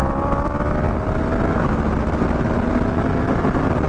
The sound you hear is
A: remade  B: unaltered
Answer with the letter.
A